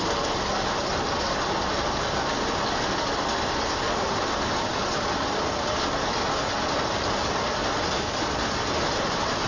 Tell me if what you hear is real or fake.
real